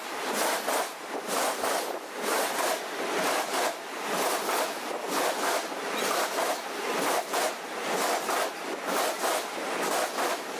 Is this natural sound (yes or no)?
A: yes